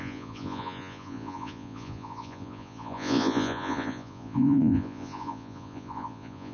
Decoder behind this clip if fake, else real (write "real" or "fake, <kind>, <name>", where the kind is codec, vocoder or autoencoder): fake, vocoder, Vocos